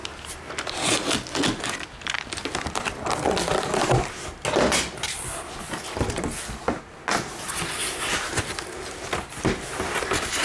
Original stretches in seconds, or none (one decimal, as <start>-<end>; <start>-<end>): 0.7-7.8